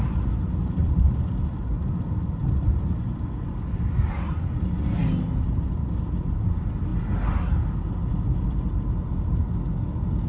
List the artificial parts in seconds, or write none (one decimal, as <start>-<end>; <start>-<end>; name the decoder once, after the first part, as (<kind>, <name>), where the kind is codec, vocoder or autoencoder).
none